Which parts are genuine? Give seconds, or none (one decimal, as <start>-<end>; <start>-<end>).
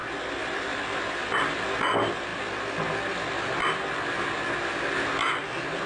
0.0-5.9